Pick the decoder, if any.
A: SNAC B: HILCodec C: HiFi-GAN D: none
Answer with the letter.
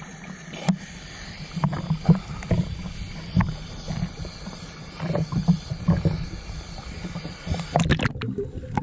D